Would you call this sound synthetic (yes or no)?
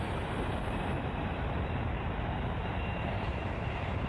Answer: yes